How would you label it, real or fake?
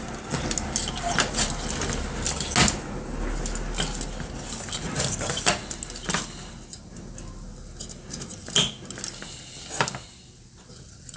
real